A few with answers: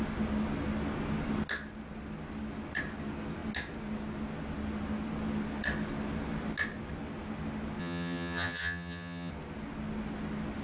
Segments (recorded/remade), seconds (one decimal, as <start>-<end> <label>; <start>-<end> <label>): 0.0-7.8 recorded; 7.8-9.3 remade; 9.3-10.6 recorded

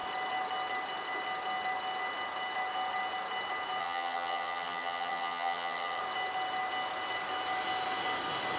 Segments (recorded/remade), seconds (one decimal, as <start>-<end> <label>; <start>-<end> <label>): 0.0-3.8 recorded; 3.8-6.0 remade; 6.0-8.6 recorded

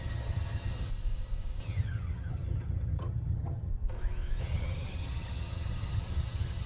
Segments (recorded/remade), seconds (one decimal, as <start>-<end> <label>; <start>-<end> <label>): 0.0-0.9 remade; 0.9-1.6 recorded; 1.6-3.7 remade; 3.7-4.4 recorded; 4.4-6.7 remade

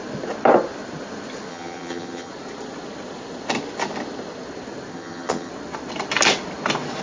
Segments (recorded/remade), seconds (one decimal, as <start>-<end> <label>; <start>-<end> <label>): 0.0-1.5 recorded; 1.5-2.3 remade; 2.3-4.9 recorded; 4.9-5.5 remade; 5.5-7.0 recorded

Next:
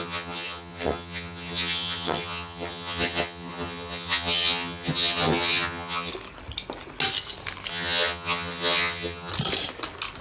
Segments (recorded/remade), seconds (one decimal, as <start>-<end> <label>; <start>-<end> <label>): 0.0-6.1 remade; 6.1-7.7 recorded; 7.7-9.3 remade; 9.3-10.2 recorded

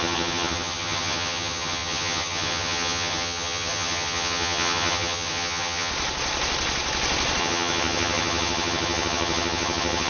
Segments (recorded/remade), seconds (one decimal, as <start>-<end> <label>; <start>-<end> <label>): 0.0-5.9 remade; 5.9-7.4 recorded; 7.4-10.1 remade